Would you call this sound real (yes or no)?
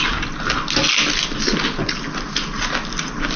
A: yes